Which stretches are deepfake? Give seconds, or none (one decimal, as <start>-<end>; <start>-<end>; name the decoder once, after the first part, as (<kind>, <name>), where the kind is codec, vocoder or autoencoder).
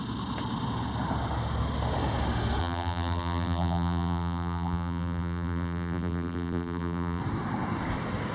2.6-7.2 (vocoder, BigVGAN v2)